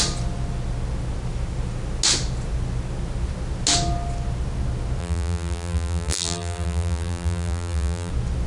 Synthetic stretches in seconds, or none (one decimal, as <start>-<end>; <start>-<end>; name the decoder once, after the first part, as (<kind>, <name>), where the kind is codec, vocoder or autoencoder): 5.0-8.1 (vocoder, BigVGAN v2)